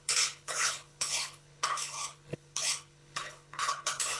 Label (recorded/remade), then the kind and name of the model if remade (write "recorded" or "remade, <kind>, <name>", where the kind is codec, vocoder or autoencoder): remade, codec, HILCodec